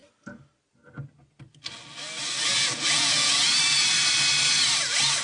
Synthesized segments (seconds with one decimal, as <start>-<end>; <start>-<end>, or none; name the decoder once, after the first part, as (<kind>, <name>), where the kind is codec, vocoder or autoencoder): 2.5-3.5 (vocoder, Vocos)